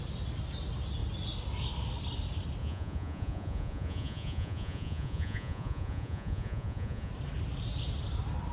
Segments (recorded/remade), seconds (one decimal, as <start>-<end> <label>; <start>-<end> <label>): 0.0-2.6 recorded; 2.6-7.1 remade; 7.1-8.5 recorded